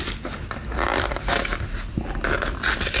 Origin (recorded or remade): recorded